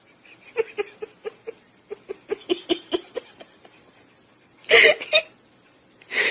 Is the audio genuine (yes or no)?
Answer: yes